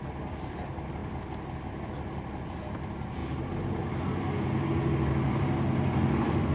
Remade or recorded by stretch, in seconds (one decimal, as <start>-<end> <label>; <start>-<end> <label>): 0.0-6.5 recorded